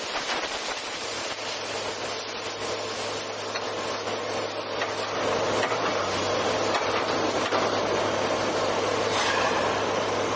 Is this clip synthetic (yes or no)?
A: no